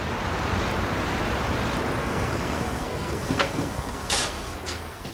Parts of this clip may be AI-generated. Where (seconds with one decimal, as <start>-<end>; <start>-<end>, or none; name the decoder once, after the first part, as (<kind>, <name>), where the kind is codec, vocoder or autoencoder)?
2.0-5.1 (codec, SNAC)